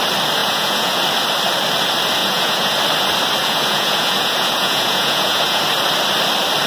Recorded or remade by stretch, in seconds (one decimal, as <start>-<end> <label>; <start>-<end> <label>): 0.0-0.4 recorded; 0.4-1.0 remade; 1.0-2.2 recorded; 2.2-2.7 remade; 2.7-3.4 recorded; 3.4-5.6 remade; 5.6-6.7 recorded